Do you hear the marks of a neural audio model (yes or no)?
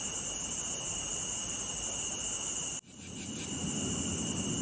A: no